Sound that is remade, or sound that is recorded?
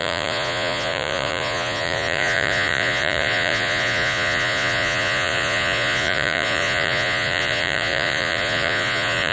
remade